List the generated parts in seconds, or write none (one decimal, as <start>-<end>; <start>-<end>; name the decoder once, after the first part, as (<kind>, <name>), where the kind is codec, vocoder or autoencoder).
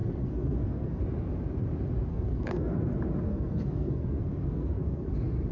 0.0-1.0 (codec, SNAC); 2.1-2.7; 3.3-5.1